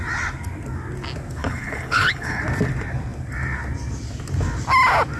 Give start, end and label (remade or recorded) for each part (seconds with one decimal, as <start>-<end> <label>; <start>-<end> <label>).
0.0-1.4 recorded; 1.4-2.4 remade; 2.4-5.2 recorded